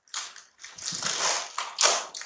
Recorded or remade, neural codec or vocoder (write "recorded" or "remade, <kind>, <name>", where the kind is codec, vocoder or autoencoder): recorded